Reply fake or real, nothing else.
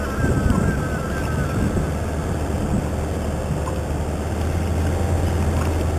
real